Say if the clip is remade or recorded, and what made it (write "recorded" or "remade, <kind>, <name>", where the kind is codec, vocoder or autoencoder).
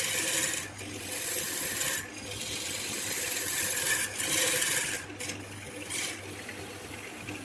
recorded